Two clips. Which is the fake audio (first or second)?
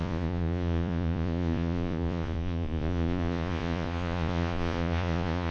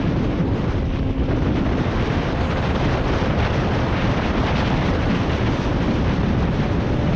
first